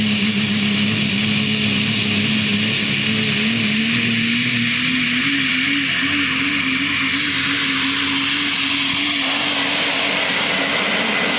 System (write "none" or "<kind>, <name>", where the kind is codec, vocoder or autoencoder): none